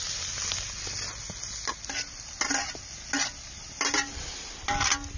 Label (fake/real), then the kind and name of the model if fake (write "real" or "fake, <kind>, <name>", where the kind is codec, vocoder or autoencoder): real